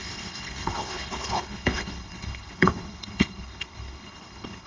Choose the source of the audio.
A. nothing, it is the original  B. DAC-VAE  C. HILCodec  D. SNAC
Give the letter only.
C